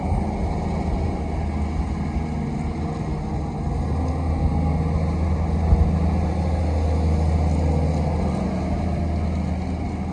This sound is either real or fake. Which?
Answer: real